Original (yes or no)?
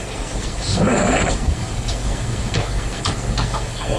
no